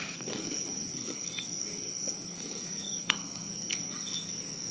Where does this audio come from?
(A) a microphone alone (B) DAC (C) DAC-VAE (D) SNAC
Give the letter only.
D